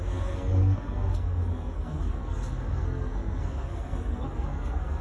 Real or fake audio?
fake